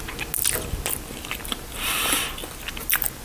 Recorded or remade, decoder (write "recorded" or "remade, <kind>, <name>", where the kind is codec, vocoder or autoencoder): recorded